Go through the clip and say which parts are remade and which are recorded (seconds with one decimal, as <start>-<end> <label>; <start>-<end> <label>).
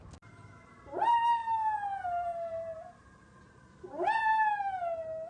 0.0-5.3 recorded